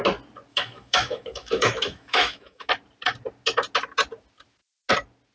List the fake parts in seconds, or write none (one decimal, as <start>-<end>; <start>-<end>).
0.5-2.7